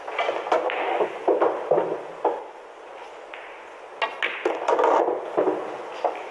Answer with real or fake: real